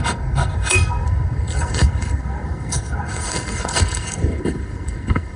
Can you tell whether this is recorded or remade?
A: remade